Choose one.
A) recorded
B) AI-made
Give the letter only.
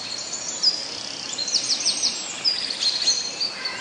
A